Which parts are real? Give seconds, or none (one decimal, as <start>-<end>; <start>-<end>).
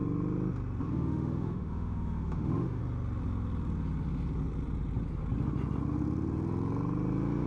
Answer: 0.0-0.9; 2.8-7.5